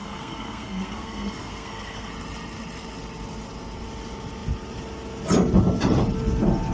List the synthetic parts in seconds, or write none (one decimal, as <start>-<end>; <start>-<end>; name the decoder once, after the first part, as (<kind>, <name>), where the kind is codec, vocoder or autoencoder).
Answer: 0.0-2.1 (codec, SNAC)